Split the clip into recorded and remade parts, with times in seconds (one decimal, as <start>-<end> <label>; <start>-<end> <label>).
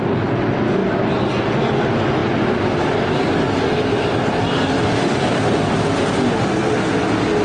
0.0-2.2 recorded; 2.2-3.3 remade; 3.3-3.7 recorded; 3.7-6.7 remade; 6.7-7.4 recorded